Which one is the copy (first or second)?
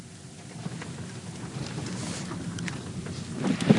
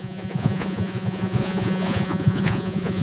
second